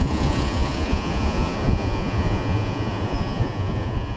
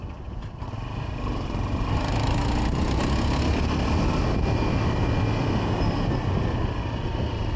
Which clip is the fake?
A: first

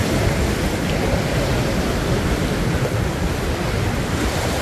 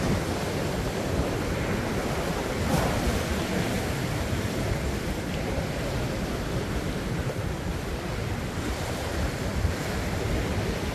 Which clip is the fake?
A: second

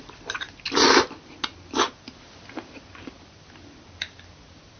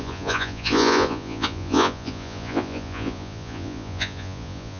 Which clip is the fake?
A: second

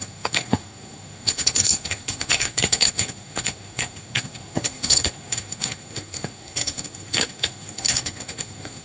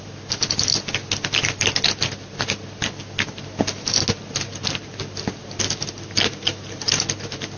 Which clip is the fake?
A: first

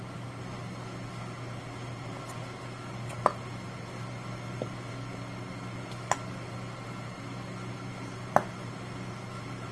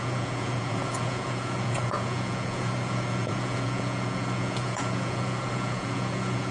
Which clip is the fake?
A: second